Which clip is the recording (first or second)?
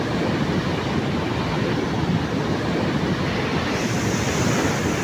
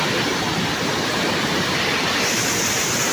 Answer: first